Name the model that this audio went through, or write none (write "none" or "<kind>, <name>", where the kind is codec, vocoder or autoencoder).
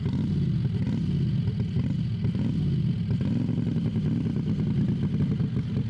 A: none